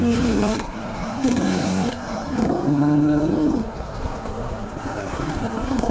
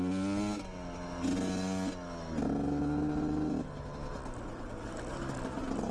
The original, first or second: second